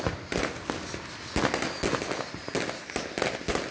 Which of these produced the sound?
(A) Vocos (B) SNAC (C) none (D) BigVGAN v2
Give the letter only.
C